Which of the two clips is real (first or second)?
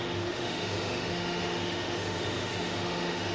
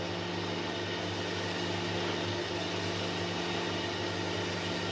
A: second